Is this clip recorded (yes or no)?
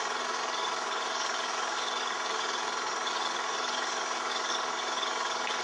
no